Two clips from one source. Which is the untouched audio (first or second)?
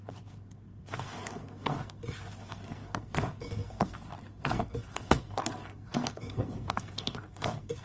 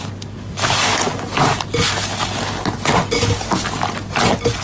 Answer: second